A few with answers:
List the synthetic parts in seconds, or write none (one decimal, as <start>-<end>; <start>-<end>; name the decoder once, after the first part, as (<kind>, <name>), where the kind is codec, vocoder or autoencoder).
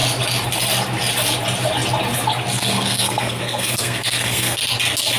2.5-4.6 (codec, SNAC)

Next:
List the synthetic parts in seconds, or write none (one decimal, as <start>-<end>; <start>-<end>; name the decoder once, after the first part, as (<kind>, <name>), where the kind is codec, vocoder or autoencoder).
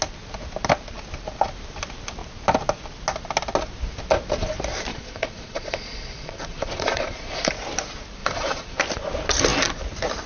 4.9-7.5 (vocoder, Vocos); 8.2-8.8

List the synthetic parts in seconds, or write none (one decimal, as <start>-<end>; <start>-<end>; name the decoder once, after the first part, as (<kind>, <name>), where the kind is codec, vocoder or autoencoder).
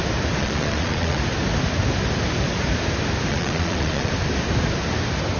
0.4-1.2 (vocoder, Vocos); 3.3-4.1